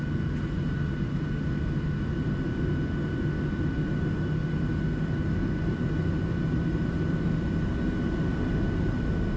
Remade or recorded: recorded